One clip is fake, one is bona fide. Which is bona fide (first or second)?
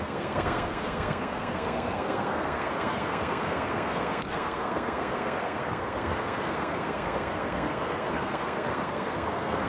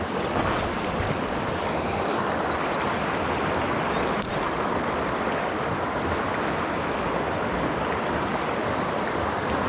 second